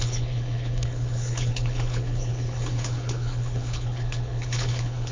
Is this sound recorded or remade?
remade